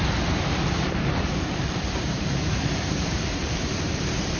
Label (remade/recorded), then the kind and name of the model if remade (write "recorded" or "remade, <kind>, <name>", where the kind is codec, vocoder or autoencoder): remade, vocoder, BigVGAN v2